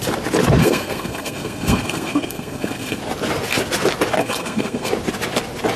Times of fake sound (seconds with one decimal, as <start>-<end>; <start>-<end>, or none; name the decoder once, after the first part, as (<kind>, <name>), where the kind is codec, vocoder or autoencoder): 0.6-3.0 (codec, SNAC); 4.2-4.9